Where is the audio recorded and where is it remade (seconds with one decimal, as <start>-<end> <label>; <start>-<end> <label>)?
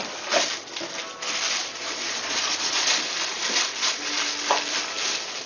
0.0-1.6 recorded; 1.6-2.9 remade; 2.9-5.5 recorded